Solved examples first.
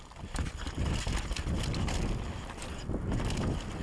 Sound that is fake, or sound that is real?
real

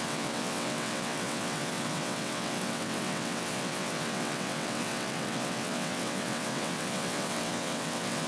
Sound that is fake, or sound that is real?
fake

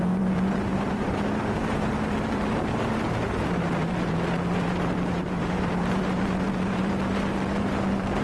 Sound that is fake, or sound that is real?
fake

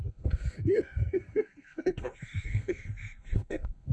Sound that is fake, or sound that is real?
fake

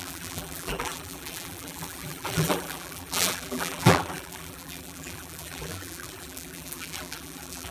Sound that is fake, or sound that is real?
fake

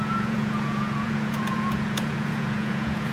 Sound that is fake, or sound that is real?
fake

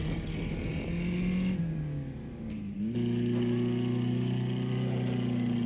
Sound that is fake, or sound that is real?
real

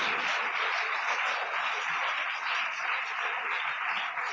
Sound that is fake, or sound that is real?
real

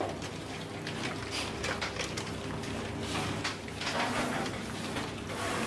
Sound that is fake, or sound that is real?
real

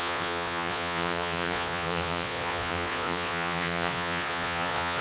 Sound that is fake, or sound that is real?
fake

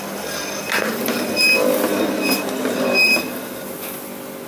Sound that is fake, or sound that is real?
real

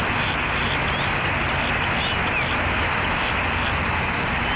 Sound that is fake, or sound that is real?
real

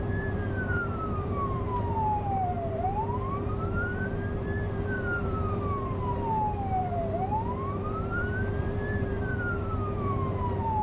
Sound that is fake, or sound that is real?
fake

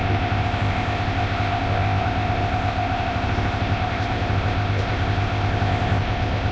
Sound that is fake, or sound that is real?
fake